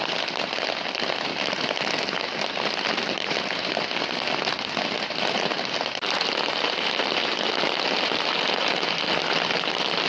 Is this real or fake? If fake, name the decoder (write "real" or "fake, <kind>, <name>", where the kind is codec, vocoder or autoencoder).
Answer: real